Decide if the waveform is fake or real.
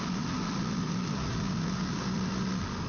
real